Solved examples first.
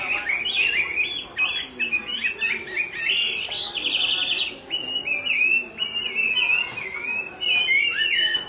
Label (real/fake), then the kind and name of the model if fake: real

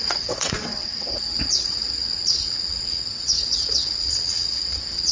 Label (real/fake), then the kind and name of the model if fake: fake, vocoder, WaveNeXt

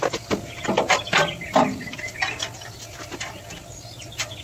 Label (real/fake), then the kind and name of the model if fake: real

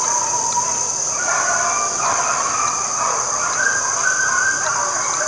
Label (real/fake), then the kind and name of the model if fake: real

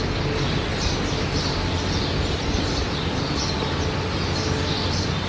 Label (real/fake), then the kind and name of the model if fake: real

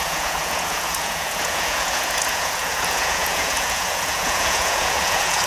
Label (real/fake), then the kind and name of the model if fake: fake, vocoder, Vocos